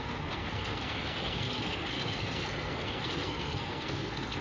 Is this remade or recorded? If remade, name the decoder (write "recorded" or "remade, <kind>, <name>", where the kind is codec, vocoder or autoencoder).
remade, codec, SNAC